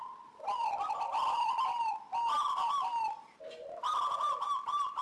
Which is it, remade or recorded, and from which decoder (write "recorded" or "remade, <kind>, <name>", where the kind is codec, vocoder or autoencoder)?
recorded